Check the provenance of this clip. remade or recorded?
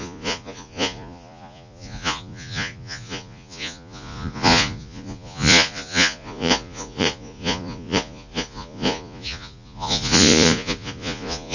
remade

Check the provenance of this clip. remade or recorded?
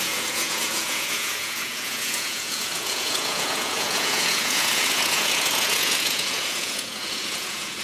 remade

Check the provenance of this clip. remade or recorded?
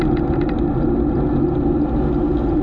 recorded